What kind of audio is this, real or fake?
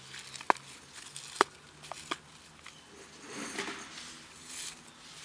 real